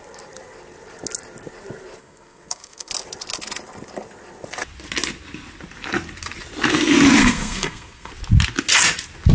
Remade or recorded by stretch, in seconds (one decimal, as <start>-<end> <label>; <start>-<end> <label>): 0.0-2.0 recorded; 2.0-2.9 remade; 2.9-7.2 recorded; 7.2-8.1 remade; 8.1-9.3 recorded